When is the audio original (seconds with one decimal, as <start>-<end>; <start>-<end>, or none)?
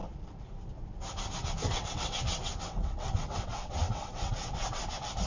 0.0-1.6; 4.8-5.3